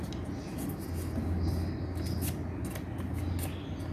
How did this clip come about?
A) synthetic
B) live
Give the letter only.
B